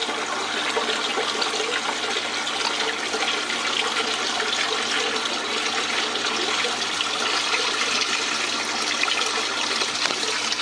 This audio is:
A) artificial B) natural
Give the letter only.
B